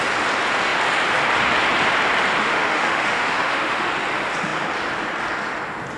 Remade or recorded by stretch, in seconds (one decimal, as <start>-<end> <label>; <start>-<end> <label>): 0.0-2.4 recorded; 2.4-3.9 remade; 3.9-6.0 recorded